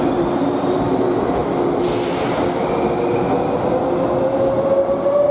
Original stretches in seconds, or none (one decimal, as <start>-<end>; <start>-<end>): 0.0-5.3